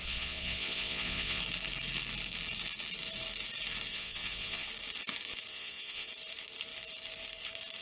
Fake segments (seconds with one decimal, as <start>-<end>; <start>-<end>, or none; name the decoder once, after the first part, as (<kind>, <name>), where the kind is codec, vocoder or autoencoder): 0.0-1.4 (vocoder, Vocos); 3.9-4.7; 5.5-6.1